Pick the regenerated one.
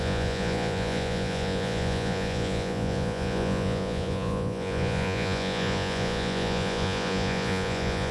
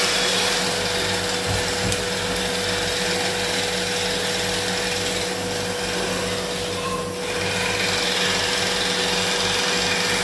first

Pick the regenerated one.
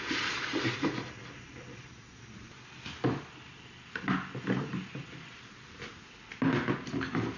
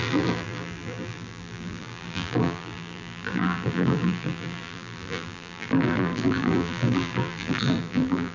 second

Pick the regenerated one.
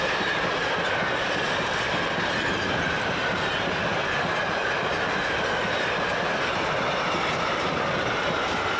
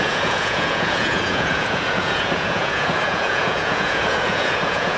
second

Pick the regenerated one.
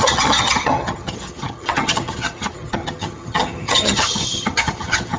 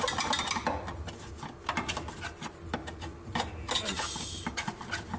first